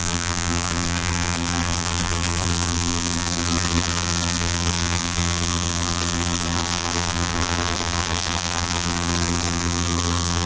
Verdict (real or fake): fake